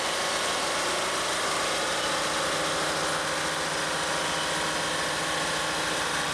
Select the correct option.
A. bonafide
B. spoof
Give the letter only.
A